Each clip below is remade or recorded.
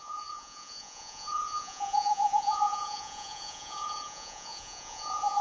remade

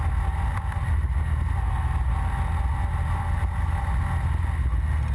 recorded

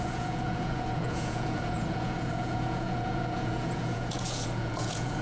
remade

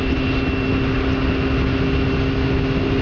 recorded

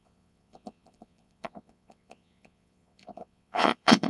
remade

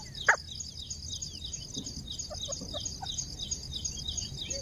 recorded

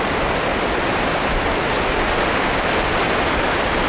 recorded